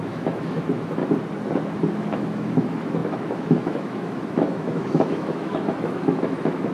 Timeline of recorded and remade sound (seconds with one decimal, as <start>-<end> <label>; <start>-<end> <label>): 0.0-1.0 remade; 1.0-2.2 recorded; 2.2-6.7 remade

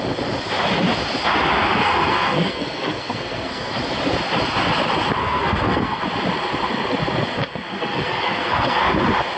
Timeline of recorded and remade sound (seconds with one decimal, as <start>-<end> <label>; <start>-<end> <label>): 0.0-1.8 recorded; 1.8-3.7 remade; 3.7-5.2 recorded; 5.2-6.0 remade; 6.0-7.3 recorded; 7.3-8.8 remade; 8.8-9.4 recorded

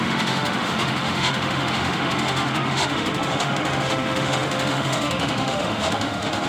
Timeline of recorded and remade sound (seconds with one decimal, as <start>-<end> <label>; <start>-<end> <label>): 0.0-6.5 remade

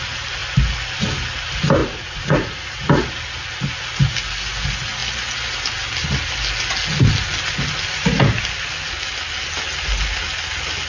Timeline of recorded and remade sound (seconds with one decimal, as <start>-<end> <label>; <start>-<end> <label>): 0.0-1.8 recorded; 1.8-3.1 remade; 3.1-10.9 recorded

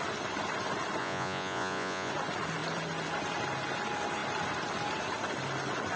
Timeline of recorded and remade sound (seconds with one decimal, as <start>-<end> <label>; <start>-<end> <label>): 0.0-1.0 recorded; 1.0-2.1 remade; 2.1-6.0 recorded

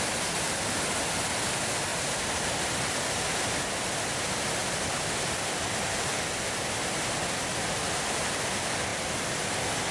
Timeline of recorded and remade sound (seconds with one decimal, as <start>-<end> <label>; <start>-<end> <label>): 0.0-9.9 recorded

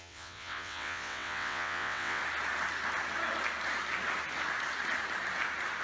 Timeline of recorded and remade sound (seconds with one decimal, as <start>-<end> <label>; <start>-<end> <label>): 0.0-2.2 remade; 2.2-5.8 recorded

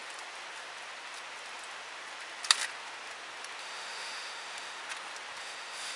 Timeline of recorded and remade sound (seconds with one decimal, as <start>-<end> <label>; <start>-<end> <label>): 0.0-3.6 recorded; 3.6-4.8 remade; 4.8-5.4 recorded; 5.4-6.0 remade